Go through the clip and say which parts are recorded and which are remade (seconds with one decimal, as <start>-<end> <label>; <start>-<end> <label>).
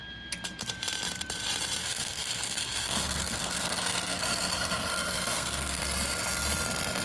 0.0-1.8 recorded; 1.8-5.8 remade; 5.8-7.0 recorded